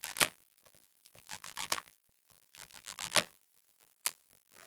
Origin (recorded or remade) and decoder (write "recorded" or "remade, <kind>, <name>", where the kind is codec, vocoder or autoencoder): remade, vocoder, BigVGAN v2